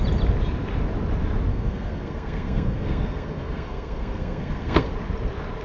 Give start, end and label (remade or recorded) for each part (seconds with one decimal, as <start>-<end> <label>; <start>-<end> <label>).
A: 0.0-1.5 recorded; 1.5-4.9 remade; 4.9-5.6 recorded